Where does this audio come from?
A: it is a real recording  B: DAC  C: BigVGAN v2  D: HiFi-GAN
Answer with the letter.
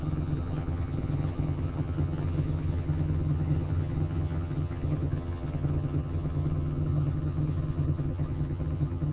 D